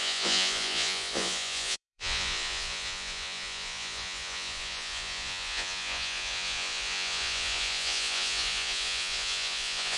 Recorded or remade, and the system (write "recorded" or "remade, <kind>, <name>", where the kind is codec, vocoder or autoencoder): remade, vocoder, Vocos